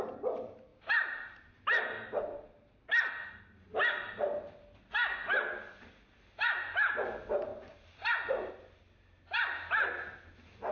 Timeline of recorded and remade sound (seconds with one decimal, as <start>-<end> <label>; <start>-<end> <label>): 0.0-10.7 recorded